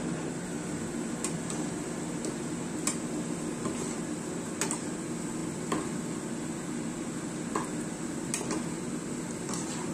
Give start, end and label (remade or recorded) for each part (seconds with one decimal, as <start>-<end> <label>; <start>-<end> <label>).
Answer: 0.0-9.9 recorded